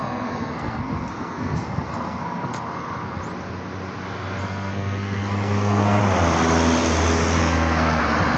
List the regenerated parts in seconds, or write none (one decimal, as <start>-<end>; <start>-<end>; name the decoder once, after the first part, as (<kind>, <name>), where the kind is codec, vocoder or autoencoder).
0.0-3.2 (codec, SNAC); 4.4-6.0; 7.4-8.0